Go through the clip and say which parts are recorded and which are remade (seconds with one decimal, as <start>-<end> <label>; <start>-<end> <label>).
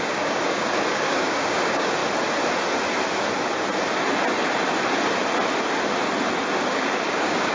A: 0.0-2.0 remade; 2.0-6.5 recorded; 6.5-7.5 remade